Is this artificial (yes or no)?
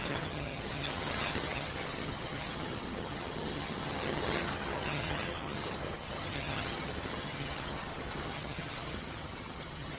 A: yes